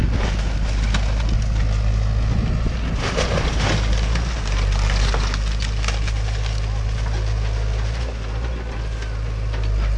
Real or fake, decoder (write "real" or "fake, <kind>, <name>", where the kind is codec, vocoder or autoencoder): real